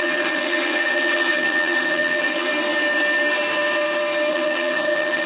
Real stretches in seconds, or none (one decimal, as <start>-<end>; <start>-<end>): 2.5-4.3